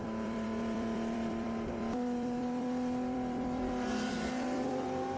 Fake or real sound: fake